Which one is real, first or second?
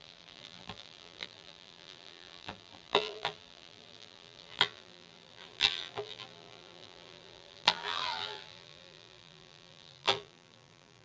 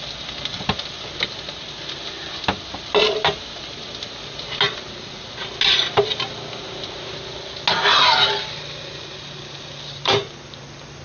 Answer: second